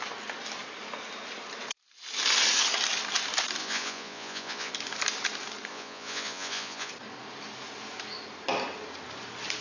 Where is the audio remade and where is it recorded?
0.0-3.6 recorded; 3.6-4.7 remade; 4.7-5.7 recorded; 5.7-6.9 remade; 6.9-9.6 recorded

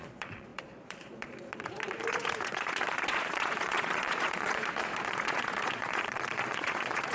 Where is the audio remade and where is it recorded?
0.0-7.1 remade